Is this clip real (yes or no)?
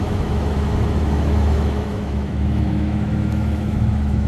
no